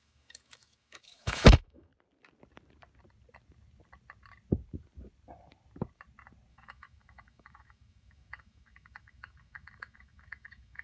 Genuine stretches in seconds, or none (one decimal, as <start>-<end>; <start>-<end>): 1.9-6.5